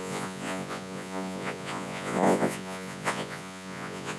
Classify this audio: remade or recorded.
remade